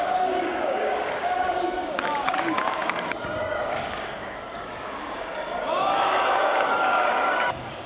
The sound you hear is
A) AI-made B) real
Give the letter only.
A